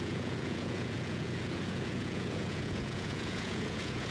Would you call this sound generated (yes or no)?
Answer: yes